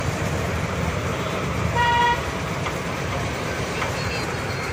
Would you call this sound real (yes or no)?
no